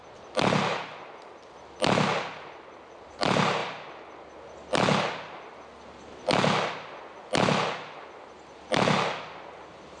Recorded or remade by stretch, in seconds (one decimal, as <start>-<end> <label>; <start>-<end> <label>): 0.0-10.0 recorded